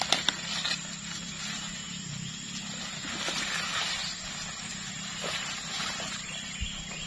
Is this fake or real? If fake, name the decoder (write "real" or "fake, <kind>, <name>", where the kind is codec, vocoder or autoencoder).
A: real